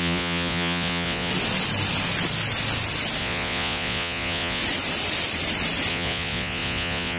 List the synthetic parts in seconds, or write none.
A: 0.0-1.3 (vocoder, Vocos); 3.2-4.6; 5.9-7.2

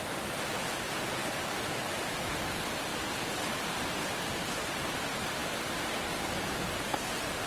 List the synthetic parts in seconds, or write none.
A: none

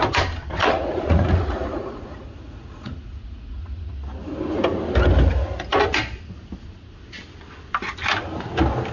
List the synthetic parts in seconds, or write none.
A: 0.6-3.9 (vocoder, Vocos)

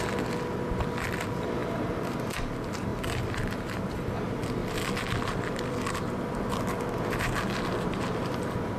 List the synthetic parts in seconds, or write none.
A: none

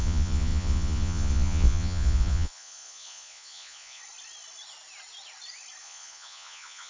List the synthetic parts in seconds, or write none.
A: 0.0-4.0 (vocoder, Vocos); 5.8-6.9